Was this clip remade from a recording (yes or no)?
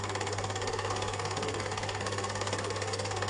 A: yes